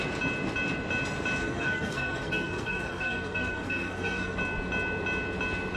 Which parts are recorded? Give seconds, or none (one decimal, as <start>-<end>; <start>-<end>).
0.0-1.4; 4.4-5.8